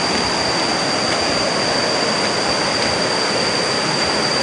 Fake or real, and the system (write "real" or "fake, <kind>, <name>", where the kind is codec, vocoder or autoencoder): real